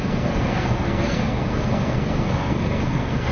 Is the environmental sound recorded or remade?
remade